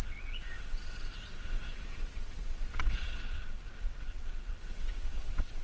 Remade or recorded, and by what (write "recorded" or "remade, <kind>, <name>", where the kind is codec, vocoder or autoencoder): remade, vocoder, WaveNeXt